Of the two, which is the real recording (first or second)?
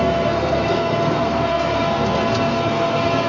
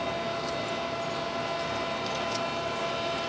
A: second